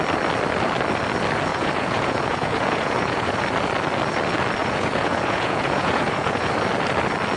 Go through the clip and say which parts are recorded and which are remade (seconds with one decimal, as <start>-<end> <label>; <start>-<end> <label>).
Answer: 0.0-1.5 recorded; 1.5-3.4 remade; 3.4-4.6 recorded; 4.6-6.5 remade; 6.5-7.4 recorded